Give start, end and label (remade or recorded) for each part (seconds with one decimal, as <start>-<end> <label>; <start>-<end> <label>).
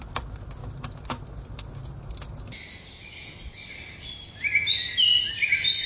0.0-5.9 recorded